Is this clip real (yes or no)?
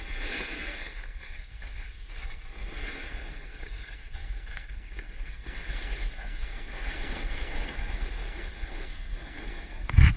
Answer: no